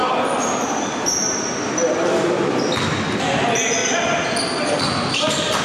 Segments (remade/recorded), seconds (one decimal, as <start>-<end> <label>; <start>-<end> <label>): 0.0-2.6 remade; 2.6-3.8 recorded; 3.8-5.6 remade